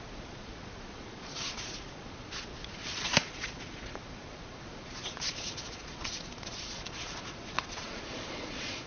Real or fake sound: fake